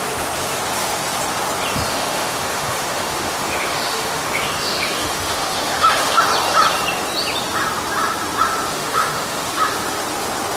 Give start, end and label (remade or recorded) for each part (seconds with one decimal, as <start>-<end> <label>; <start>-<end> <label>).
0.0-1.9 recorded; 1.9-6.2 remade; 6.2-8.7 recorded; 8.7-9.5 remade; 9.5-10.6 recorded